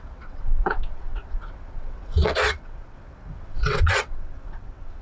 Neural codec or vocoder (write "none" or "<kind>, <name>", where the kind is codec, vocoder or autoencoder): vocoder, WaveNeXt